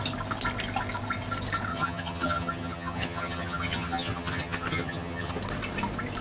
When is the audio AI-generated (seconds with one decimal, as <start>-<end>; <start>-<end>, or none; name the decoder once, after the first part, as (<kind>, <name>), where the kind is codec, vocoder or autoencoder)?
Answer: 1.7-5.4 (vocoder, HiFi-GAN)